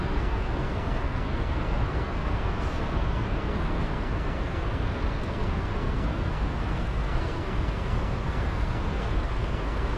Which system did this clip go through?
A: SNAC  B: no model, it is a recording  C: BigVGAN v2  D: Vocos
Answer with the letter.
A